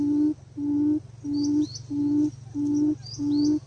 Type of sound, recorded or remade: recorded